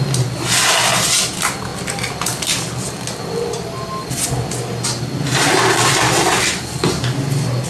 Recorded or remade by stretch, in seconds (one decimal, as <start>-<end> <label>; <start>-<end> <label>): 0.0-7.7 recorded